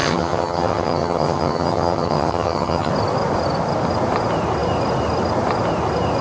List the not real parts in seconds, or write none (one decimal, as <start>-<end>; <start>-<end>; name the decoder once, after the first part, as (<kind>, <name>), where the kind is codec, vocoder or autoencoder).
0.0-2.9 (vocoder, HiFi-GAN)